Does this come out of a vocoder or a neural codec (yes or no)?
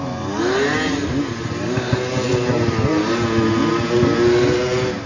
no